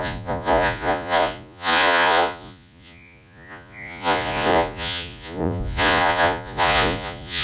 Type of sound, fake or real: fake